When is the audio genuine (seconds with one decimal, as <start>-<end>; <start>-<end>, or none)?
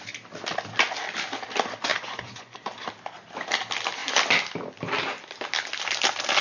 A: 0.0-1.9; 2.7-6.4